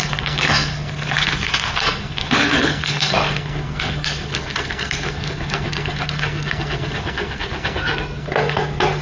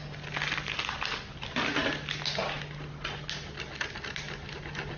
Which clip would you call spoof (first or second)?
first